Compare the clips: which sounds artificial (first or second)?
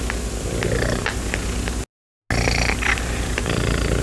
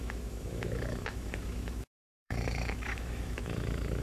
second